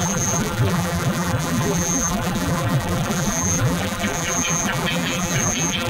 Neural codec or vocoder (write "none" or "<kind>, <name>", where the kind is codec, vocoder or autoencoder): vocoder, BigVGAN v2